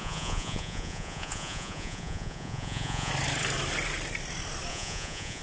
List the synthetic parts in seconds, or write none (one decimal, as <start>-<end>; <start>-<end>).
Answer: 0.0-3.1; 4.7-5.4